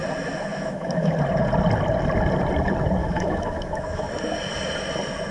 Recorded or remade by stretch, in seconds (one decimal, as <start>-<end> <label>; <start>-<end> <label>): 0.0-0.5 recorded; 0.5-1.1 remade; 1.1-3.0 recorded; 3.0-4.1 remade; 4.1-5.3 recorded